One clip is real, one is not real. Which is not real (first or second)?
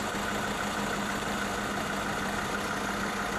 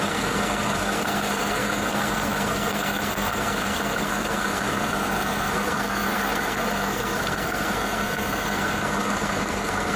second